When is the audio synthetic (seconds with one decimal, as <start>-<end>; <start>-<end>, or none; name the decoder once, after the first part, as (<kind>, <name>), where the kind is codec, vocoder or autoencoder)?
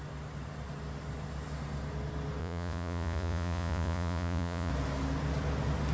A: 2.4-4.7 (vocoder, Vocos)